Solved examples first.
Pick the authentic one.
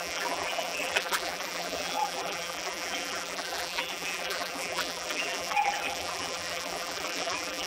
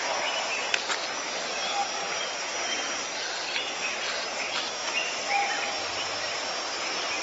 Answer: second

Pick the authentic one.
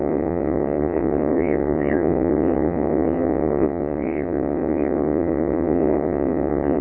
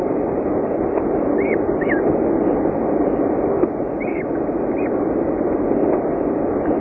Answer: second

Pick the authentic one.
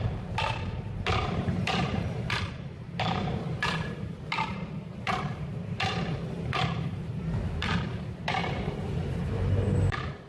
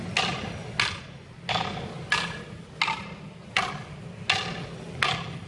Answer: second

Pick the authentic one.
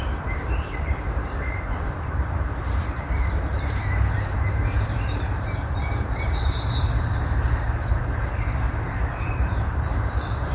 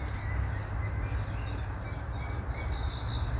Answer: second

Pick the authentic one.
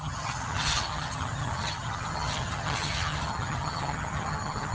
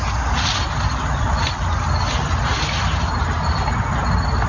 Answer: second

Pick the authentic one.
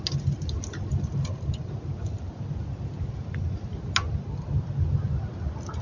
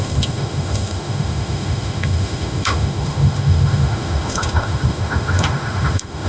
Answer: first